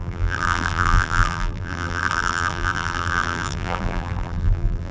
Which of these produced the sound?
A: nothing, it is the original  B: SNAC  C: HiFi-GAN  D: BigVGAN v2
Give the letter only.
D